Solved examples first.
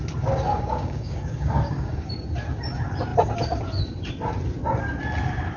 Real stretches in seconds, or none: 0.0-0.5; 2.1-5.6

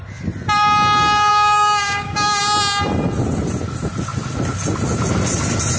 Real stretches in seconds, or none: 0.0-1.3; 2.4-5.8

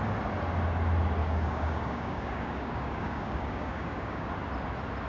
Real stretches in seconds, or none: 0.0-1.2; 4.3-5.1

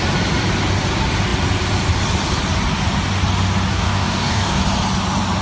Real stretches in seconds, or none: 0.0-3.7; 4.6-5.4

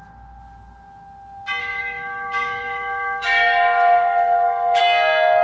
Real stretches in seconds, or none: 0.0-1.6; 4.8-5.4